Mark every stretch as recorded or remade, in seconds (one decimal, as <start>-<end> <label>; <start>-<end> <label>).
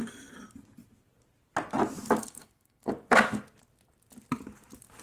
0.0-2.2 recorded; 2.2-2.9 remade; 2.9-5.0 recorded